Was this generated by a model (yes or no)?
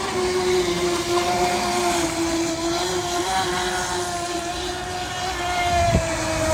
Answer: no